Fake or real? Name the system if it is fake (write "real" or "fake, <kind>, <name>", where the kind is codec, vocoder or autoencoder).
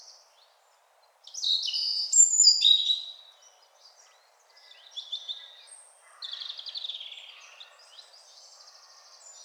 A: real